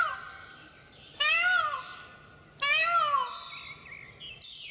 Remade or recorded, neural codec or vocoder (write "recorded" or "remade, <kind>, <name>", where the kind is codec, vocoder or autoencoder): recorded